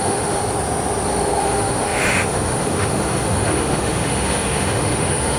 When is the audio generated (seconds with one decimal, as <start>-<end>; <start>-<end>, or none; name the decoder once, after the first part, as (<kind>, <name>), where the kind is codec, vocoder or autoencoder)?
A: 0.0-0.4 (autoencoder, DAC-VAE); 1.4-5.4